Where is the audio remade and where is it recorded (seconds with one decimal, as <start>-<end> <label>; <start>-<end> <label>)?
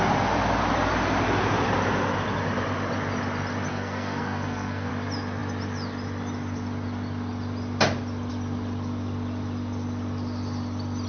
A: 0.0-3.7 recorded; 3.7-4.9 remade; 4.9-11.1 recorded